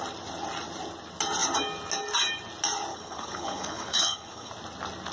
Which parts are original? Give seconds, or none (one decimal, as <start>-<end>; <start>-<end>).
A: 0.0-2.9; 4.5-5.1